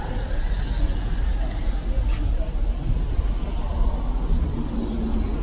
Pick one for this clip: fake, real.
real